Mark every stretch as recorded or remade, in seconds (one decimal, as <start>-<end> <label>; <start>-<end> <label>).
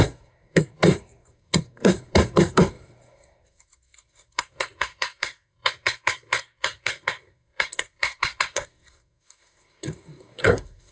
0.0-10.9 remade